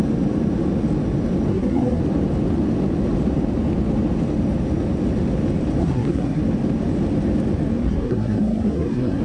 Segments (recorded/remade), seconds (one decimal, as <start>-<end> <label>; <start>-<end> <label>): 0.0-1.5 recorded; 1.5-2.0 remade; 2.0-5.8 recorded; 5.8-6.4 remade; 6.4-7.8 recorded; 7.8-9.2 remade

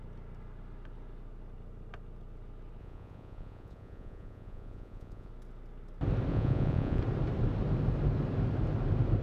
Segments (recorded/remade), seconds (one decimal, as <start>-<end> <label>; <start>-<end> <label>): 0.0-2.8 recorded; 2.8-5.3 remade; 5.3-6.3 recorded; 6.3-7.0 remade; 7.0-9.2 recorded

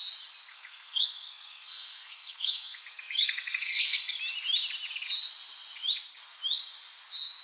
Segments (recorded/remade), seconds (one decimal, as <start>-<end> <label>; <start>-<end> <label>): 0.0-0.5 recorded; 0.5-4.1 remade; 4.1-7.4 recorded